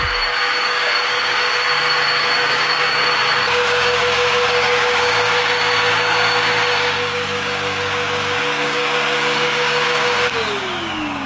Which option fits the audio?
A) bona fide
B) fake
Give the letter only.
B